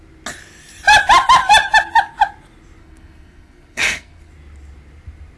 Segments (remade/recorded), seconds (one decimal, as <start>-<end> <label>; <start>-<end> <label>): 0.0-2.8 recorded; 2.8-4.3 remade; 4.3-5.4 recorded